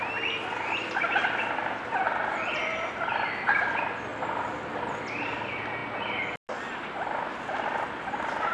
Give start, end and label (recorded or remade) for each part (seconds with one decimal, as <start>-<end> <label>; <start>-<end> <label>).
0.0-8.5 recorded